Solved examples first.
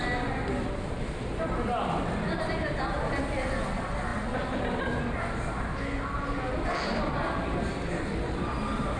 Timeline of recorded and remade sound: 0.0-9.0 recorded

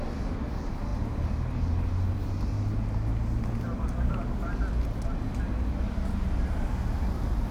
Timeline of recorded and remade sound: 0.0-7.5 recorded